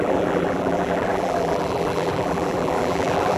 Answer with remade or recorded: remade